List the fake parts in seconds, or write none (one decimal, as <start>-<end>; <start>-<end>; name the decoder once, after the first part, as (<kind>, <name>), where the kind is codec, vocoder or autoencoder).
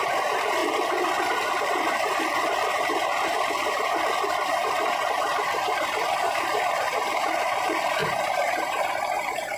0.0-0.6 (vocoder, BigVGAN v2); 1.2-9.6